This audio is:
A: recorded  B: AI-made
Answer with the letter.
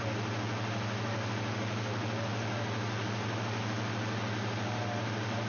A